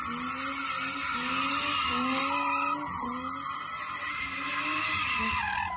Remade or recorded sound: recorded